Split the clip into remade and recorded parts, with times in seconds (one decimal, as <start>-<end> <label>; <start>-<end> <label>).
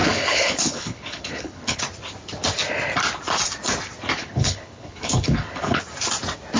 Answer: 0.0-1.8 remade; 1.8-4.2 recorded; 4.2-5.8 remade; 5.8-6.6 recorded